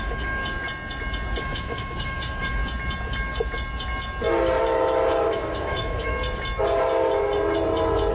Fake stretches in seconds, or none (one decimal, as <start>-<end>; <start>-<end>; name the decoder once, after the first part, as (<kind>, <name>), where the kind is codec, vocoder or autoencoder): 0.0-0.4 (autoencoder, DAC-VAE); 1.4-2.6; 4.6-6.1

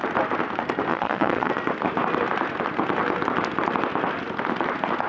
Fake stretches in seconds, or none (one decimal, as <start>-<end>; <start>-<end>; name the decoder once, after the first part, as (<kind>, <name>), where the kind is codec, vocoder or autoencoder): 0.9-1.5 (vocoder, Vocos)

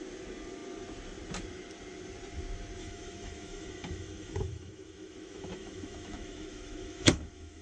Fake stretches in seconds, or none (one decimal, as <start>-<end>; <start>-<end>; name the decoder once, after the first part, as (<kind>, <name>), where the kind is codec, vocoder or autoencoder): 2.8-7.6 (autoencoder, DAC-VAE)

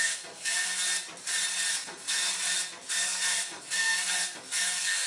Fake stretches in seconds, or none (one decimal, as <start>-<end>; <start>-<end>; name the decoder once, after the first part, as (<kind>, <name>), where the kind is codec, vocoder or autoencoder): 0.0-0.8 (codec, SNAC); 1.7-2.3; 2.9-5.1